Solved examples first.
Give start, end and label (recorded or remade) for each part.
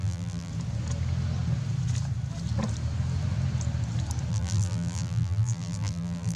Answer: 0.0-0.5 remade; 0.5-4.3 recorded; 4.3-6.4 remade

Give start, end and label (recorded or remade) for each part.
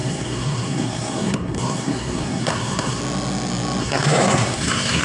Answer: 0.0-3.0 remade; 3.0-3.8 recorded; 3.8-5.0 remade